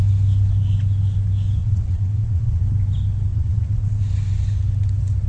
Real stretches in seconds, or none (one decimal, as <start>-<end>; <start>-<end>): 0.0-1.6; 2.6-3.3; 4.0-5.3